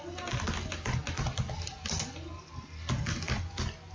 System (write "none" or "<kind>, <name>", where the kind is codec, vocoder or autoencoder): none